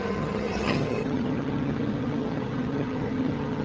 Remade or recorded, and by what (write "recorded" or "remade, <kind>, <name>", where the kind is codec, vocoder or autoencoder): remade, vocoder, HiFi-GAN